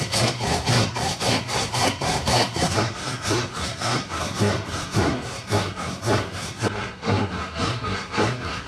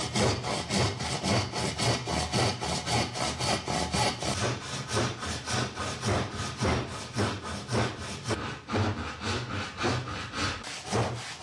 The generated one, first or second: first